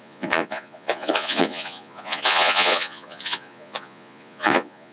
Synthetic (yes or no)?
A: yes